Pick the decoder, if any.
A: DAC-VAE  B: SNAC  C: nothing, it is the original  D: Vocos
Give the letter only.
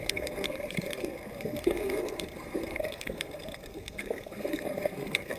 B